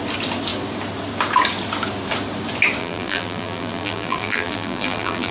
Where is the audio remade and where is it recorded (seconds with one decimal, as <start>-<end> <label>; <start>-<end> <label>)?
0.0-2.8 recorded; 2.8-5.3 remade